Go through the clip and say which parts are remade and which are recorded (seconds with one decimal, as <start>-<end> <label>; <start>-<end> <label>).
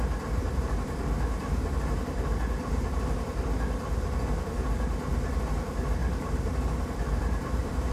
0.0-0.4 recorded; 0.4-1.0 remade; 1.0-6.0 recorded; 6.0-7.9 remade